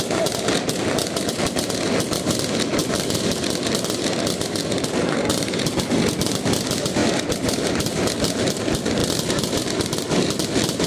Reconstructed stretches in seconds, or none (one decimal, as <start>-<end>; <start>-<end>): 2.8-3.5; 7.0-8.0; 9.0-9.8